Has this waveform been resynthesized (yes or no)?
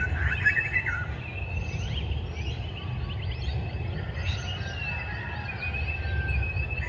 no